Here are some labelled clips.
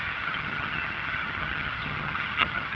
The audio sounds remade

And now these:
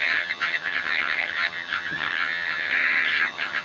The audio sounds remade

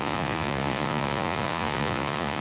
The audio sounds remade